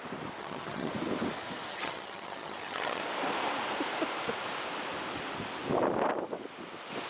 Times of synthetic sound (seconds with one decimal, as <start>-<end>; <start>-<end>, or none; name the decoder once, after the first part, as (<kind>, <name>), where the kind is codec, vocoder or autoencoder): 0.4-0.9 (vocoder, HiFi-GAN); 1.7-3.0